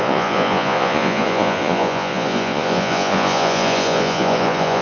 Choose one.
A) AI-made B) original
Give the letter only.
A